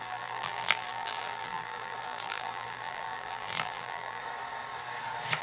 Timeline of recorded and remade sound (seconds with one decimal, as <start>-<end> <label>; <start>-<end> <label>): 0.0-4.2 remade; 4.2-5.4 recorded